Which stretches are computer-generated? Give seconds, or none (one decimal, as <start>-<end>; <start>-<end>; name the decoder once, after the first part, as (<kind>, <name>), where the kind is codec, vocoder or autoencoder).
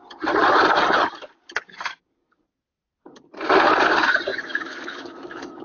4.3-5.6 (autoencoder, DAC-VAE)